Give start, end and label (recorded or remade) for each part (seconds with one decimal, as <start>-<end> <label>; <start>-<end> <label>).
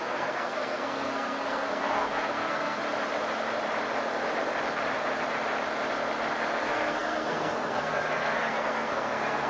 0.0-2.8 remade; 2.8-6.6 recorded; 6.6-9.5 remade